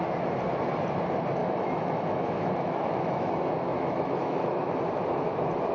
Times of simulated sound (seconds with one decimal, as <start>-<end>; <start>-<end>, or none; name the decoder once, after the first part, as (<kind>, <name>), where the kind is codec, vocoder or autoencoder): 1.4-3.3 (autoencoder, DAC-VAE); 3.7-4.8